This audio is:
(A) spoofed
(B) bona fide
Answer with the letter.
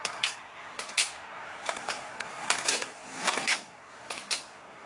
A